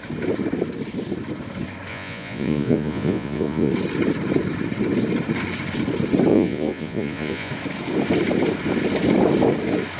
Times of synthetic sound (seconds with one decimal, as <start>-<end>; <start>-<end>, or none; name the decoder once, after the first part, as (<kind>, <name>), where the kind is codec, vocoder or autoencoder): 1.9-3.7 (vocoder, Vocos); 6.3-7.5